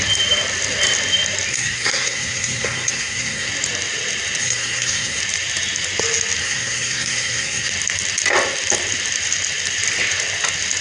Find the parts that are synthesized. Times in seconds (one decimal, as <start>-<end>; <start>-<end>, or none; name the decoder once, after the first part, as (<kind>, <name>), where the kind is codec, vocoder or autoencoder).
1.5-3.5 (codec, SNAC); 4.4-5.2; 6.4-7.7